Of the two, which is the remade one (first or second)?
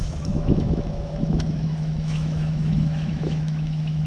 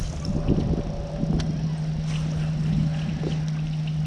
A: first